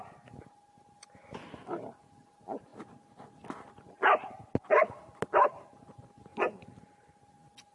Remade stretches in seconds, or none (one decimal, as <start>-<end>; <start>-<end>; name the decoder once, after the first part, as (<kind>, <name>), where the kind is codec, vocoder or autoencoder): 6.3-7.2 (vocoder, BigVGAN v2)